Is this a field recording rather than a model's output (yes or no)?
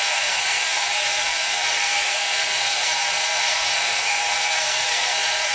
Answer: no